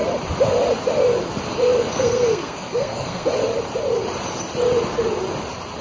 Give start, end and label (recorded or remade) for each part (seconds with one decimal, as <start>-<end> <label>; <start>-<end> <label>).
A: 0.0-1.9 recorded; 1.9-3.3 remade; 3.3-5.8 recorded

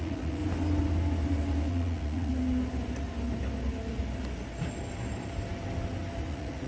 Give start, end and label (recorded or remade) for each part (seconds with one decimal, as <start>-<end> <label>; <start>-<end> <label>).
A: 0.0-0.4 remade; 0.4-1.7 recorded; 1.7-2.3 remade; 2.3-6.3 recorded; 6.3-6.7 remade

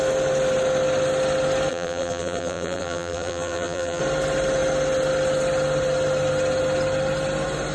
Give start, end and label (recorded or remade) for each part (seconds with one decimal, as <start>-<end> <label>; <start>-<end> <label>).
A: 0.0-1.7 recorded; 1.7-4.0 remade; 4.0-7.7 recorded

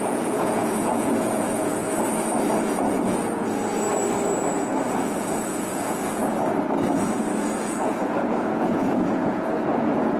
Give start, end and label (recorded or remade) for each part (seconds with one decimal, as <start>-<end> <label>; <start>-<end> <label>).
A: 0.0-1.8 remade; 1.8-2.6 recorded; 2.6-3.6 remade; 3.6-4.6 recorded; 4.6-6.2 remade; 6.2-7.4 recorded; 7.4-10.2 remade

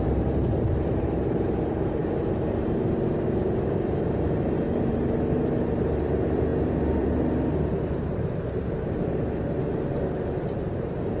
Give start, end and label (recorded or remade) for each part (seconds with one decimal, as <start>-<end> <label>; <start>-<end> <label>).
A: 0.0-11.2 remade

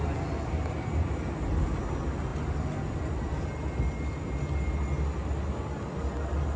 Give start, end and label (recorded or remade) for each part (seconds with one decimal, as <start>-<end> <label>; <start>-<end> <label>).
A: 0.0-6.6 recorded